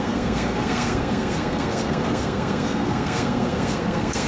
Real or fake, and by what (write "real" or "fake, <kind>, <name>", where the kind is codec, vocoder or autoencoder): fake, codec, SNAC